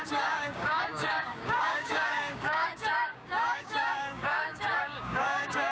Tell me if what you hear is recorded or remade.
remade